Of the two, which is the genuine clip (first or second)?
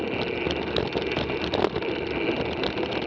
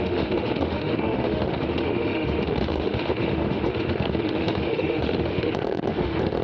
first